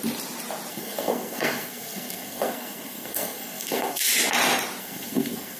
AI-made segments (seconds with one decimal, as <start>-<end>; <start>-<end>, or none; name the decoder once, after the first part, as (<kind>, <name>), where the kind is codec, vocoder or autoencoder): 0.7-4.1 (codec, SNAC); 4.8-5.6